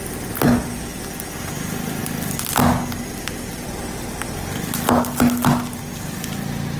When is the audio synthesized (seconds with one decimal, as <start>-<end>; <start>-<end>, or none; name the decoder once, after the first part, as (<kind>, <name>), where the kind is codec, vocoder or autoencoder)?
none